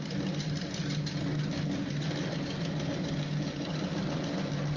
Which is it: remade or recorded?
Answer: recorded